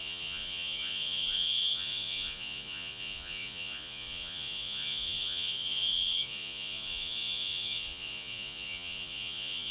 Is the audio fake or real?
fake